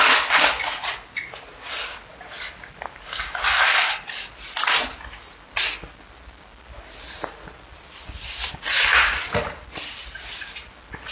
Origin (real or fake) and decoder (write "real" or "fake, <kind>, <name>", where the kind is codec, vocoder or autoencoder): real